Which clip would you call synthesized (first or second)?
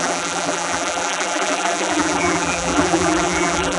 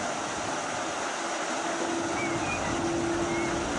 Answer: first